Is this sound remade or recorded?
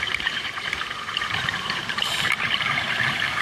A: remade